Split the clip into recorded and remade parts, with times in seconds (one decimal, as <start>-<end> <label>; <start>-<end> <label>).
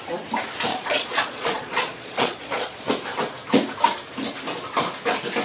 0.0-0.7 recorded; 0.7-2.9 remade; 2.9-5.4 recorded